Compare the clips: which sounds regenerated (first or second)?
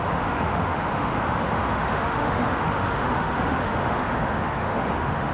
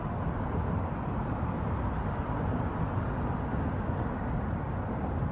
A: first